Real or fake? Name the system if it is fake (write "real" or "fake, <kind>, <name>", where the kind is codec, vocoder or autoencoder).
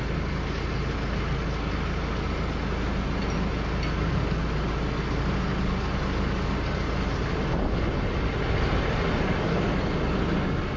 real